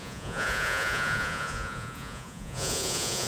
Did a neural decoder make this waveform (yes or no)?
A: yes